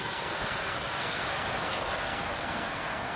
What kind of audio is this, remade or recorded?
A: remade